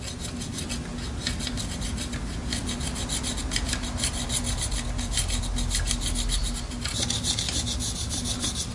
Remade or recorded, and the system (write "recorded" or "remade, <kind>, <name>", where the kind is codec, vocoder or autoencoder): recorded